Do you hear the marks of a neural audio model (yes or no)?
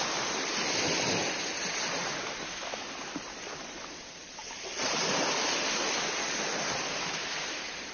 no